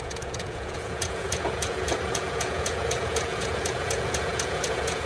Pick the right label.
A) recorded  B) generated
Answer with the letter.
B